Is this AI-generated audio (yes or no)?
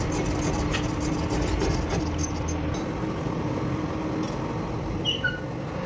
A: no